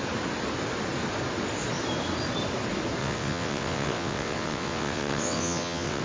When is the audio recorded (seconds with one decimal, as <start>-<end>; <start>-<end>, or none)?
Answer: 0.0-3.0